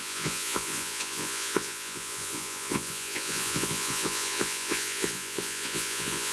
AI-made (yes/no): yes